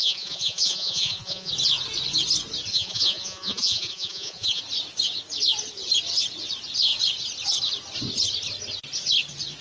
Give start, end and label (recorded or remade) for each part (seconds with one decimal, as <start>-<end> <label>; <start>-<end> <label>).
0.0-1.5 remade; 1.5-2.7 recorded; 2.7-4.6 remade; 4.6-9.6 recorded